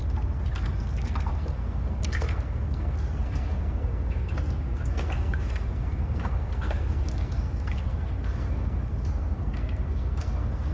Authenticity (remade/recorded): remade